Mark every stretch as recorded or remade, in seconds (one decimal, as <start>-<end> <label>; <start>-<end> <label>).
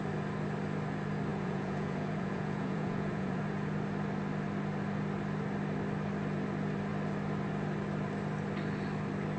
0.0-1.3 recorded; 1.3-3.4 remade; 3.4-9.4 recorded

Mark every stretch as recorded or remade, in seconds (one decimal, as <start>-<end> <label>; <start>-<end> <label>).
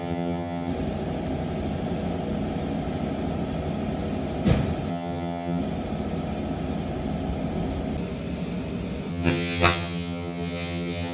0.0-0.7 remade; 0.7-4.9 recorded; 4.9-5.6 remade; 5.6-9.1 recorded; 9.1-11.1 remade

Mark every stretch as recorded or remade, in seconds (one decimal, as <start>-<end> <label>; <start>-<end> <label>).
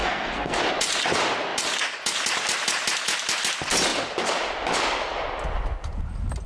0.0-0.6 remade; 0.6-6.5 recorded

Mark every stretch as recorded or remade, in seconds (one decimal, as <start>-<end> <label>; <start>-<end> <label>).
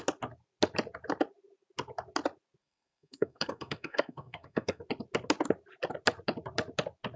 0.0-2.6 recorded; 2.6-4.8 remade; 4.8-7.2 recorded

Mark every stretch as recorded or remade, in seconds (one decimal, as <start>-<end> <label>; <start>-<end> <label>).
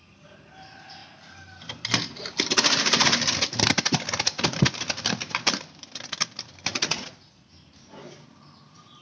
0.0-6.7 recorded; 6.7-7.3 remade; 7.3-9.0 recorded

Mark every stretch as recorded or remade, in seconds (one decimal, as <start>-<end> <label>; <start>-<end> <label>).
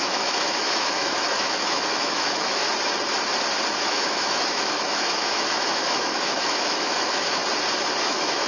0.0-2.6 remade; 2.6-3.8 recorded; 3.8-7.4 remade; 7.4-8.0 recorded; 8.0-8.5 remade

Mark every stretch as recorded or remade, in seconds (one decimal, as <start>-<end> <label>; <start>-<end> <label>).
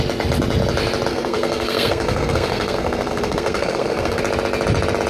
0.0-1.1 recorded; 1.1-4.2 remade; 4.2-5.1 recorded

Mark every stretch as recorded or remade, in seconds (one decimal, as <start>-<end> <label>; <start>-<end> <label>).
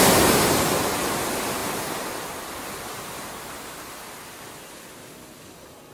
0.0-1.6 recorded; 1.6-3.8 remade; 3.8-5.9 recorded